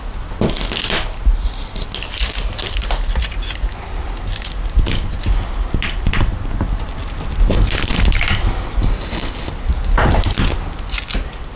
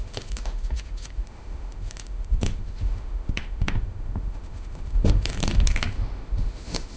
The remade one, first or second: second